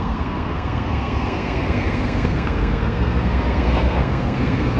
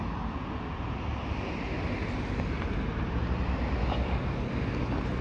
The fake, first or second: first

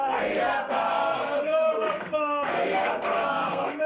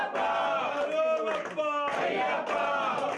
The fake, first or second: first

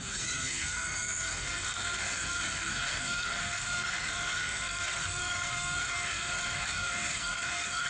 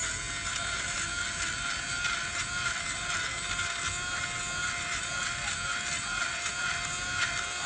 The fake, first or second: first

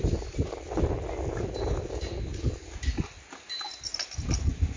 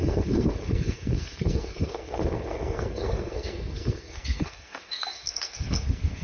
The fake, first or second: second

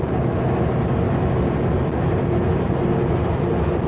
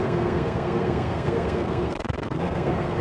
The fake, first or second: second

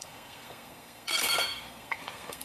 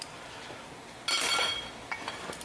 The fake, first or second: first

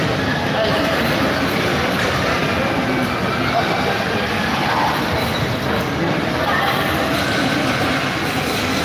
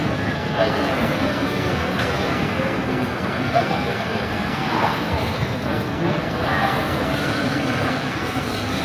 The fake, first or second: second